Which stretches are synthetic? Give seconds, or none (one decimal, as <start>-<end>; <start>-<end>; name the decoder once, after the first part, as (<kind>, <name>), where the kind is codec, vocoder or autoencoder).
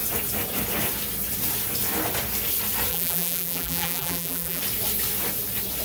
2.9-4.6 (vocoder, BigVGAN v2)